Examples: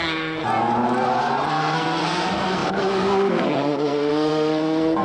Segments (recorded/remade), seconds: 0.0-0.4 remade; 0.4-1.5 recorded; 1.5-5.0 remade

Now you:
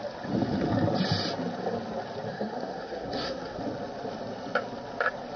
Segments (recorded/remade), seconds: 0.0-2.3 recorded; 2.3-3.6 remade; 3.6-5.4 recorded

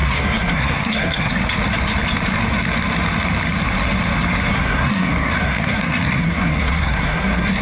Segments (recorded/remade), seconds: 0.0-1.3 remade; 1.3-4.5 recorded; 4.5-7.6 remade

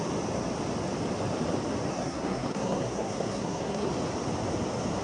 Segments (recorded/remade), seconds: 0.0-1.9 recorded; 1.9-3.9 remade; 3.9-5.0 recorded